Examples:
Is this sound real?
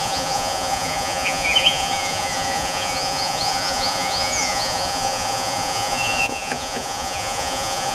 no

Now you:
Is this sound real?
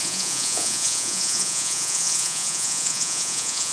no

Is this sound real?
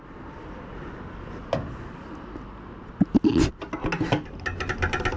yes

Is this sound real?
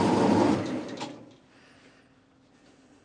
yes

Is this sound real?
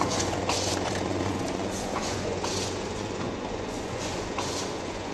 no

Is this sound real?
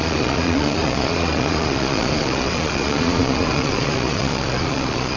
no